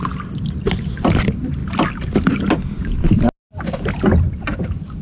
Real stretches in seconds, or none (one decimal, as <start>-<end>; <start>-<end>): 0.0-5.0